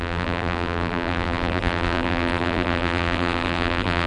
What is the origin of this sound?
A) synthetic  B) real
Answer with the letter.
A